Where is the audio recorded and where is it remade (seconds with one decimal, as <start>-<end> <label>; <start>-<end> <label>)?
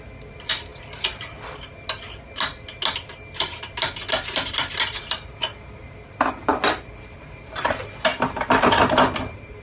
0.0-6.5 recorded; 6.5-7.6 remade; 7.6-9.6 recorded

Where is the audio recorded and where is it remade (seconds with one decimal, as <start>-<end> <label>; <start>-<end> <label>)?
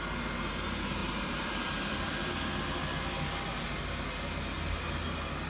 0.0-1.0 recorded; 1.0-2.3 remade; 2.3-5.5 recorded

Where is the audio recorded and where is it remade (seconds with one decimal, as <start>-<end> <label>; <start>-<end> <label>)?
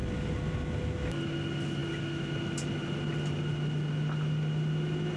0.0-5.2 recorded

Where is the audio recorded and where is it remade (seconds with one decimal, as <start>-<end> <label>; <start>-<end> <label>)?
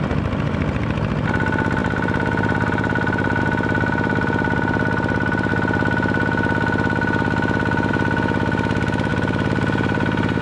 0.0-1.8 recorded; 1.8-3.4 remade; 3.4-9.1 recorded; 9.1-10.4 remade